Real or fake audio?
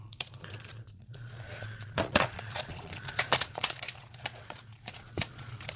fake